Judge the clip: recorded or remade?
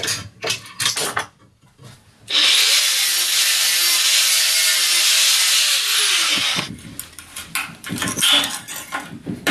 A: recorded